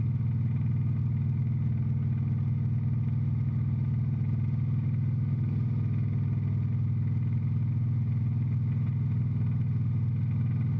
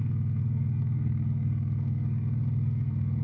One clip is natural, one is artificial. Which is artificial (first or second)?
second